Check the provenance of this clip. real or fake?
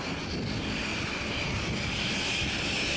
real